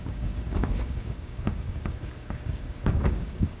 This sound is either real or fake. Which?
fake